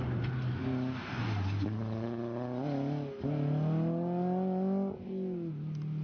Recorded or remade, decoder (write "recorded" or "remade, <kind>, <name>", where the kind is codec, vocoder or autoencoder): recorded